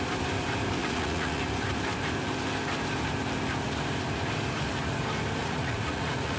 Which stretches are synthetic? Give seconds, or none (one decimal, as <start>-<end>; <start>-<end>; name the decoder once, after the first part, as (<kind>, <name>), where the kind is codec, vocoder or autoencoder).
0.8-1.4 (vocoder, Vocos); 5.4-6.4